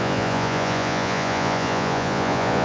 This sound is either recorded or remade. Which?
remade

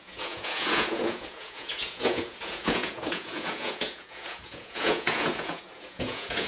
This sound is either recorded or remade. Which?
remade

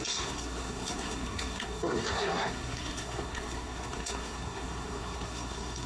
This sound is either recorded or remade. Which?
remade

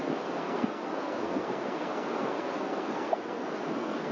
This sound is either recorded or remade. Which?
remade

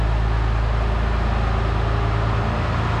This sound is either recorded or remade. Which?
recorded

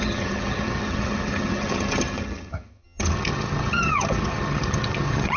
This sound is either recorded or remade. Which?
remade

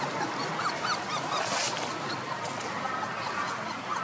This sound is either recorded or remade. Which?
recorded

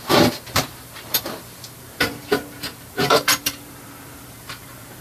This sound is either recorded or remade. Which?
remade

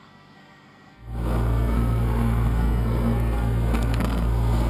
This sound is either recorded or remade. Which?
remade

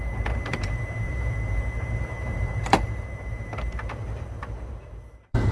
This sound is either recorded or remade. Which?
remade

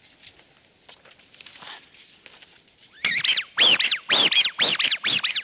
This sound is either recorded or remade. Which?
recorded